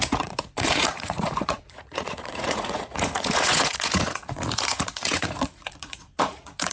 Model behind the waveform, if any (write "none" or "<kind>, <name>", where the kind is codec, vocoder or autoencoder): vocoder, Vocos